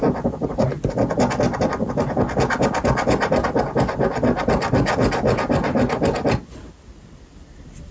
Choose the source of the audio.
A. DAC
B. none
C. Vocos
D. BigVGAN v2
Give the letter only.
B